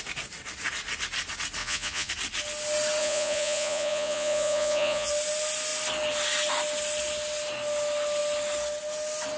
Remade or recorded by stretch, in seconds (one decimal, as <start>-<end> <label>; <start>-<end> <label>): 0.0-1.6 recorded; 1.6-2.1 remade; 2.1-3.0 recorded; 3.0-5.1 remade; 5.1-9.4 recorded

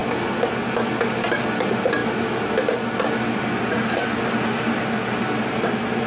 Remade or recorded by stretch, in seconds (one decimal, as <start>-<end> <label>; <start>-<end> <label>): 0.0-6.1 recorded

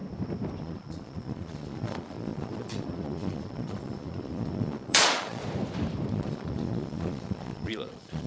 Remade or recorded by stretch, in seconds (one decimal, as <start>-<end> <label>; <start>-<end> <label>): 0.0-0.6 recorded; 0.6-5.4 remade; 5.4-6.1 recorded; 6.1-8.3 remade